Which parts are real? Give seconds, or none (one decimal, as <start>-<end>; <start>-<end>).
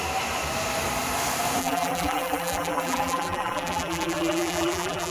0.0-1.6